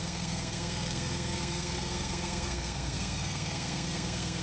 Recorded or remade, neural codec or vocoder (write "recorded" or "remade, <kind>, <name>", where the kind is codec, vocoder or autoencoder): remade, codec, SNAC